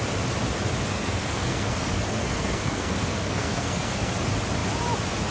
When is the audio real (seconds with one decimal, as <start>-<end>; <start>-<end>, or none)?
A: 0.0-0.9; 4.1-5.3